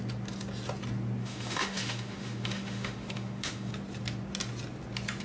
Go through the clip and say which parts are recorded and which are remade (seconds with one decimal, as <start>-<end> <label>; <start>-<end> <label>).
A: 0.0-1.2 recorded; 1.2-3.7 remade; 3.7-5.2 recorded